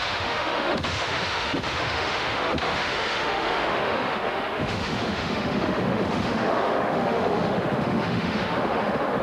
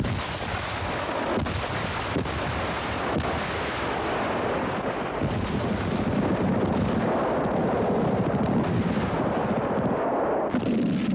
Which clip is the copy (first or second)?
first